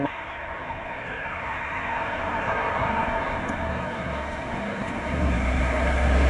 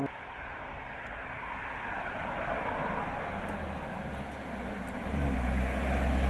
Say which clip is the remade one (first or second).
first